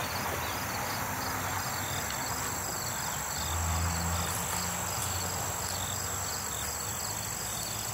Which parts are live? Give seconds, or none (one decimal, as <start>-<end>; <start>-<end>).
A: 0.0-7.9